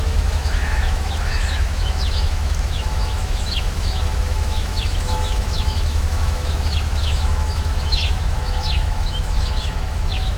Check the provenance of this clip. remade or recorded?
remade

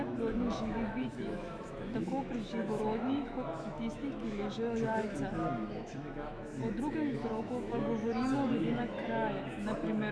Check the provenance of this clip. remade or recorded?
remade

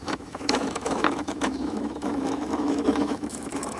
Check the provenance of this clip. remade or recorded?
remade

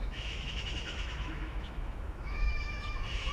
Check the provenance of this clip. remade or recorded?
remade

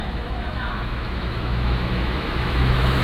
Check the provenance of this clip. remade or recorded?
remade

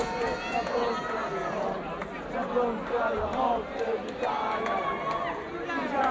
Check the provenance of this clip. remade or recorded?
recorded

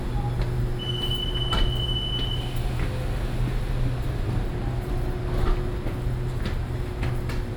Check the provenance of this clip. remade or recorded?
recorded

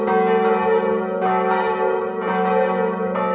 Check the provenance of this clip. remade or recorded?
recorded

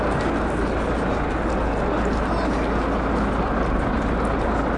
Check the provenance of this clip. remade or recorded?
recorded